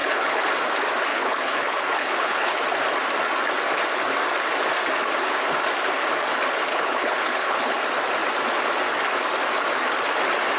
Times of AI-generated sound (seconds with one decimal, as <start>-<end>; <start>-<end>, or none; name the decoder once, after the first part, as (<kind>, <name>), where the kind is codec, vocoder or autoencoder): 0.0-0.5 (codec, HILCodec); 1.1-2.6; 6.7-7.8